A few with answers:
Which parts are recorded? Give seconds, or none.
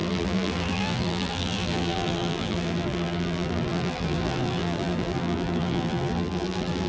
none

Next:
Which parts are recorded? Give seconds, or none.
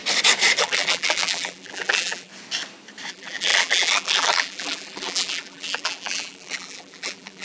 0.0-0.6; 2.3-3.1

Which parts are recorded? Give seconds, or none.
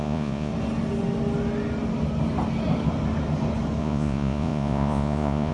0.5-3.8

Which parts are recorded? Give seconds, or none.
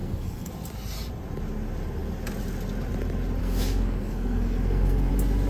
0.5-3.4; 5.1-5.5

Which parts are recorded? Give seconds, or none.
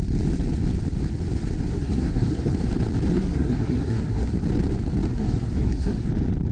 0.0-1.7; 2.5-3.1; 4.3-5.1; 6.1-6.5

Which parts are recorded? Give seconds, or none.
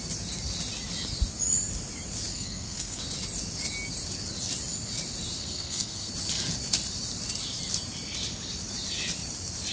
0.0-2.3; 3.0-5.4; 6.1-9.7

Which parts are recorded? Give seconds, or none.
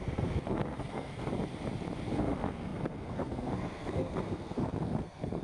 1.3-2.1